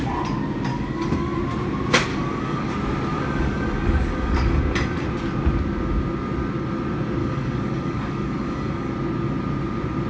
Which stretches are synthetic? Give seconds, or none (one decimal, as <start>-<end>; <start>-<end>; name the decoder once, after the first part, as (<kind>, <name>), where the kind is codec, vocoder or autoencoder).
0.7-1.4 (codec, DAC); 2.1-2.7; 3.1-4.6; 7.2-8.9